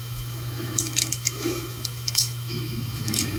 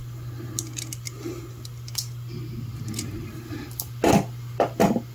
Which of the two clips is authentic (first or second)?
second